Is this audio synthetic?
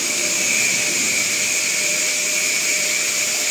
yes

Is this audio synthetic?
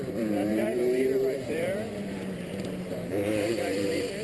yes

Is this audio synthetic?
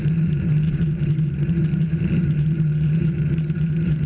yes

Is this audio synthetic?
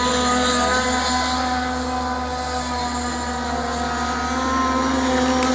no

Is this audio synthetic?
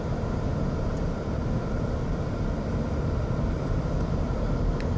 no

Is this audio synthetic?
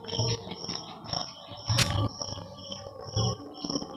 no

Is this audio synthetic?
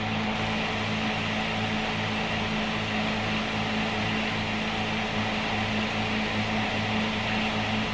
no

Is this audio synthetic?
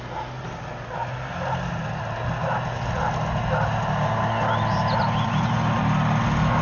no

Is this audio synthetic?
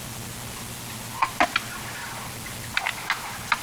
no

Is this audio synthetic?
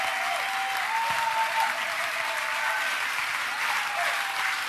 no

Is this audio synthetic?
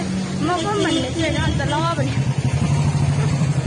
yes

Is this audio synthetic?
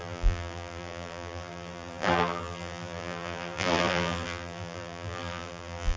yes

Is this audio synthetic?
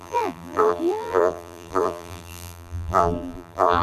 yes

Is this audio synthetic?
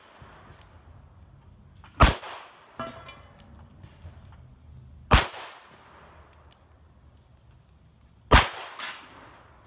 no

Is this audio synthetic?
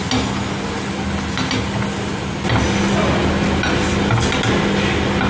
no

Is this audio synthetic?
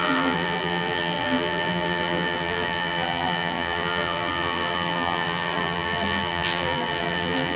yes